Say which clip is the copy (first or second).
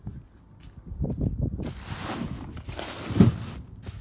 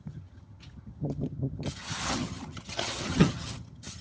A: second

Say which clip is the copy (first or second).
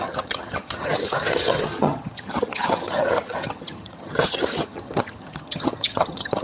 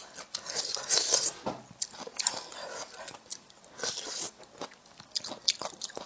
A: first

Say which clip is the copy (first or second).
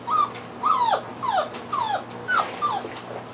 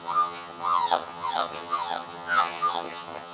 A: second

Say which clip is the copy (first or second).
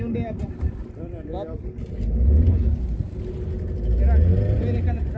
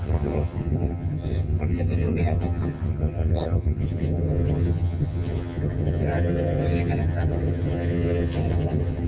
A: second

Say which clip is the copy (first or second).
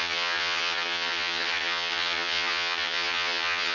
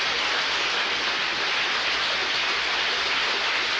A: first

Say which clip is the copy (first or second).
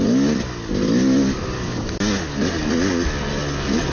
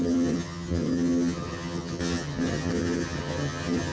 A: second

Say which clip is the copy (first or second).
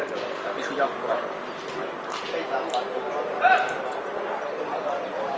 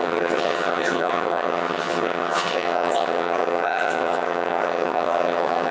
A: second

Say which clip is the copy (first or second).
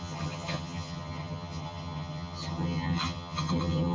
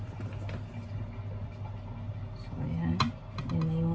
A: first